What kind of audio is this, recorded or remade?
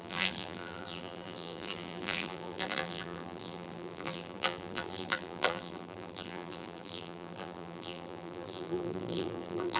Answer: remade